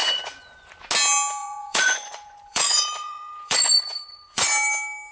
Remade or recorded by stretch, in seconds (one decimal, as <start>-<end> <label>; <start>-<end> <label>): 0.0-0.7 remade; 0.7-1.4 recorded; 1.4-4.5 remade; 4.5-5.1 recorded